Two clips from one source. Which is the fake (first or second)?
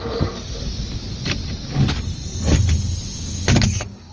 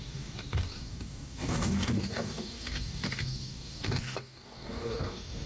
second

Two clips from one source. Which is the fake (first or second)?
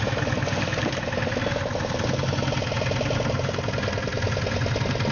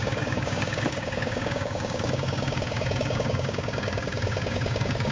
second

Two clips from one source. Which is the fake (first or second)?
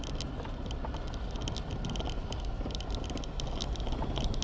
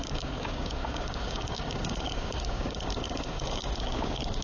second